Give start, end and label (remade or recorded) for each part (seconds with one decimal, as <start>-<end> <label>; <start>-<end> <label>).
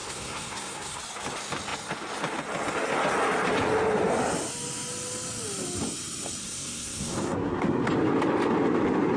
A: 0.0-1.0 remade; 1.0-6.4 recorded; 6.4-7.9 remade; 7.9-9.2 recorded